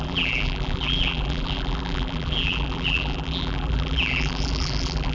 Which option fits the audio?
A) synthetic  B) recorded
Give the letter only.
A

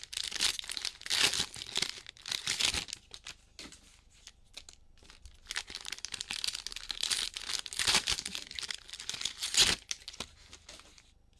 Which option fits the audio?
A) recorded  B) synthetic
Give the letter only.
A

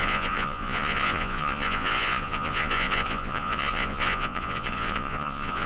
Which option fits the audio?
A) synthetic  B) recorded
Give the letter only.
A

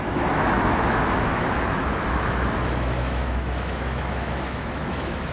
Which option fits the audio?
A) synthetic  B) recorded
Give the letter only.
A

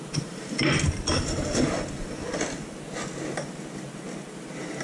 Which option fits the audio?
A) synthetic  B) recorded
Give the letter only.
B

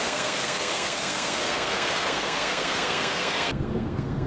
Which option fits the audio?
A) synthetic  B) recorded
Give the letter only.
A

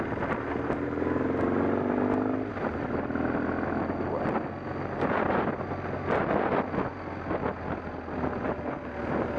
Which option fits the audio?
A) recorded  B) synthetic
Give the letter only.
A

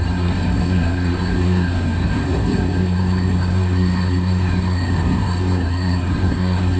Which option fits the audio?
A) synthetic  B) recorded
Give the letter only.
A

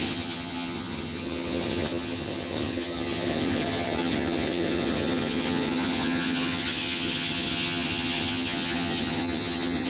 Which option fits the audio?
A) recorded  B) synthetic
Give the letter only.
B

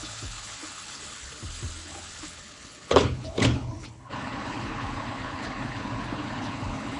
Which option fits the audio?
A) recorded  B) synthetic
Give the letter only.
B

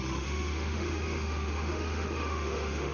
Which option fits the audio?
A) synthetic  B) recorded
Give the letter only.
A